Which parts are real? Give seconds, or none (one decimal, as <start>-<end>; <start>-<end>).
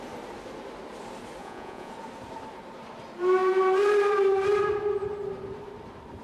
0.0-1.4; 1.9-6.2